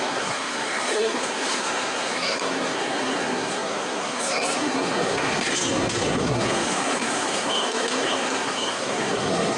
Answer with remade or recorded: remade